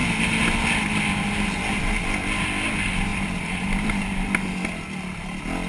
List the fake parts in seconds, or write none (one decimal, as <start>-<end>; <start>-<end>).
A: 3.1-3.9